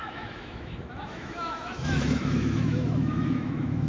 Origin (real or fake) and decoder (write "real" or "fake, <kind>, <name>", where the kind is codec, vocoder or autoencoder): fake, autoencoder, DAC-VAE